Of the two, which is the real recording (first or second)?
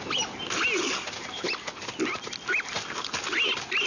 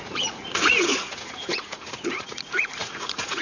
first